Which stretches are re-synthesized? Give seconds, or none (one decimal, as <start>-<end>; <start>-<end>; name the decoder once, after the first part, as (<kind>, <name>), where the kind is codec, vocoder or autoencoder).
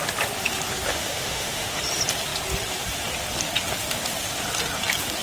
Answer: 0.9-1.8 (autoencoder, DAC-VAE)